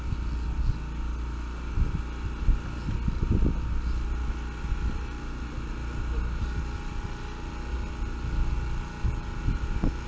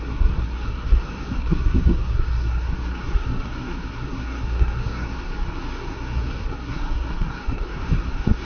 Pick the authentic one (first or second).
first